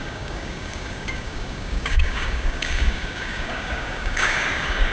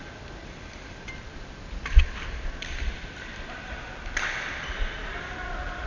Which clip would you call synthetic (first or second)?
first